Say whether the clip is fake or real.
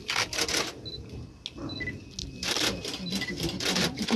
real